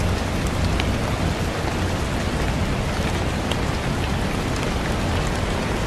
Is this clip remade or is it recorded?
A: recorded